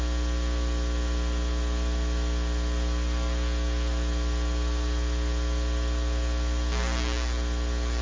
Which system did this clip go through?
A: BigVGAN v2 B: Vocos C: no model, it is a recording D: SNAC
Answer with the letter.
C